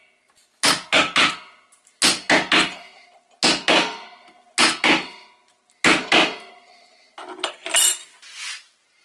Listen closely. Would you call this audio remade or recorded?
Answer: recorded